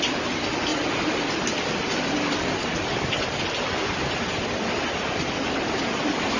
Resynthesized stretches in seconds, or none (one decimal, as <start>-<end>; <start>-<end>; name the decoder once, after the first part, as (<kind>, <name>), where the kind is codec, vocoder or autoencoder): none